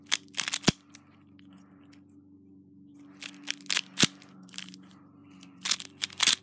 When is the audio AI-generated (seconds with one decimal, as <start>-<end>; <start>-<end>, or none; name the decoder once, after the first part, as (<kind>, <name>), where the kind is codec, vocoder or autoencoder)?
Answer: 5.2-6.4 (vocoder, BigVGAN v2)